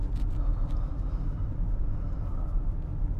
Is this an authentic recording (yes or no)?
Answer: yes